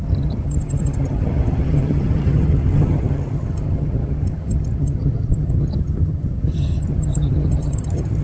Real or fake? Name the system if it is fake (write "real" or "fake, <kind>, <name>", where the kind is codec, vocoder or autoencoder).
fake, vocoder, HiFi-GAN